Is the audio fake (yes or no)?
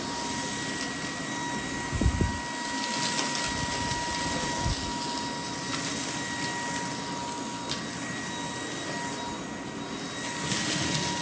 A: no